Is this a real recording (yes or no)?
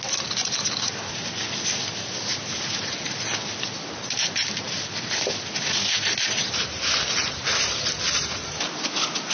yes